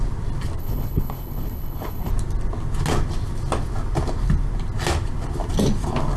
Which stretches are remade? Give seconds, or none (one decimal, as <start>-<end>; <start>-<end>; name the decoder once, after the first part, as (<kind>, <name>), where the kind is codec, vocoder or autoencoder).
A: 0.6-2.1 (codec, HILCodec)